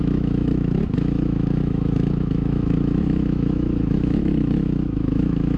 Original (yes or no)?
no